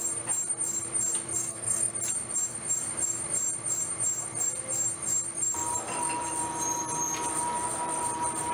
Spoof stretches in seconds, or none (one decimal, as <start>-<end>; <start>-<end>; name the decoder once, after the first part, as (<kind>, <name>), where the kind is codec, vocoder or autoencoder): 1.4-1.9 (codec, SNAC)